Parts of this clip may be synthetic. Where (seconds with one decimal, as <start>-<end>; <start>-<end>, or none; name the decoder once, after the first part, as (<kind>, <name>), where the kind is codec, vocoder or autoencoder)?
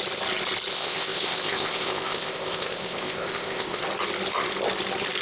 0.7-3.8 (codec, ZipCodec)